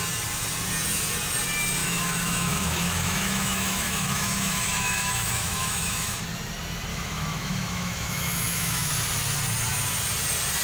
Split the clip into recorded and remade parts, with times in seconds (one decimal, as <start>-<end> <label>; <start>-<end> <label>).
0.0-1.8 recorded; 1.8-6.2 remade; 6.2-6.9 recorded; 6.9-8.9 remade; 8.9-10.6 recorded